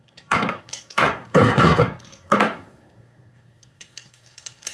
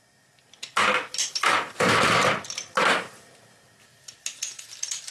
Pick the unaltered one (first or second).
second